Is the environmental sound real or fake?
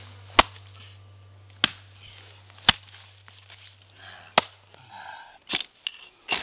real